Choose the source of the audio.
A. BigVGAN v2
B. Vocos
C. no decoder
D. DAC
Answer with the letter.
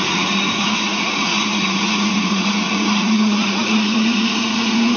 B